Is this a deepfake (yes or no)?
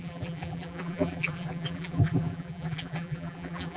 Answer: yes